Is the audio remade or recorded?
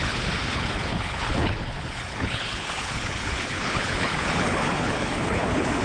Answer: remade